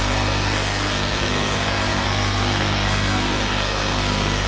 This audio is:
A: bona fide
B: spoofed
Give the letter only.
B